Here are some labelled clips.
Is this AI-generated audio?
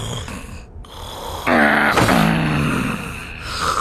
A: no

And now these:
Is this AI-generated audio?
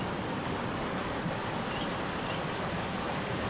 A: no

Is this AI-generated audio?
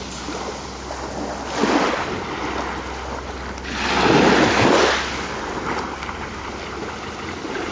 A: no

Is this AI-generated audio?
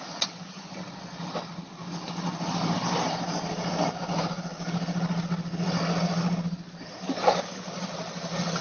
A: no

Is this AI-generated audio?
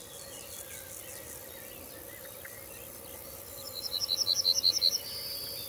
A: no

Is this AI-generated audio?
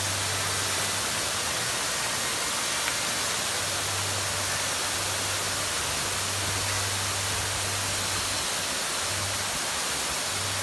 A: no